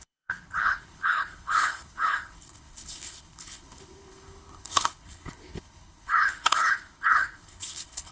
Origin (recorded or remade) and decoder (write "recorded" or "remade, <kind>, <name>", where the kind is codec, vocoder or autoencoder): remade, codec, HILCodec